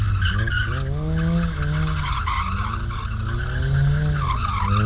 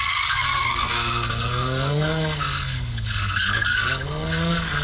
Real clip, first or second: first